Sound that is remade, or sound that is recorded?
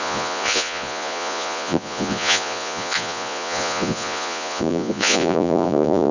remade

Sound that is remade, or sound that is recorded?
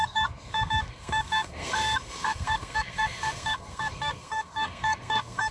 remade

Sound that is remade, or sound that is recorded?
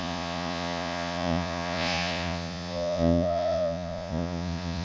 remade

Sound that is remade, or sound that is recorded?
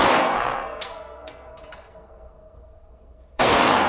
remade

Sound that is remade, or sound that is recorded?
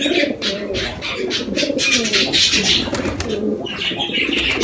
recorded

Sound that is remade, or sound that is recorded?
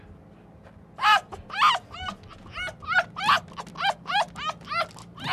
recorded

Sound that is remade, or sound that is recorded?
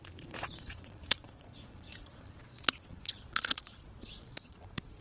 remade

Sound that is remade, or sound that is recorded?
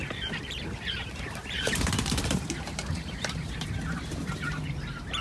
remade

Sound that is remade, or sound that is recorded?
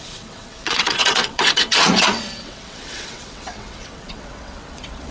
remade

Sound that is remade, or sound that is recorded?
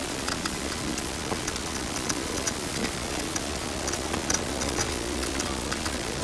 remade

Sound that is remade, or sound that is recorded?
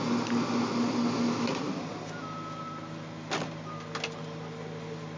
recorded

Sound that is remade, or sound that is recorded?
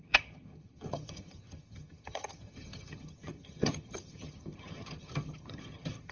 remade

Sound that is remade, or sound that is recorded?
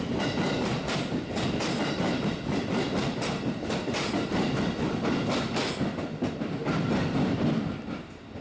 recorded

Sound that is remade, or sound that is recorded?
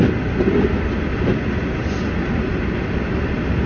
recorded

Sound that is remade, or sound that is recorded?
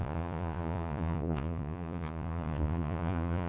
remade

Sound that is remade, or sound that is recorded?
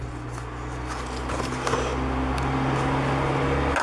recorded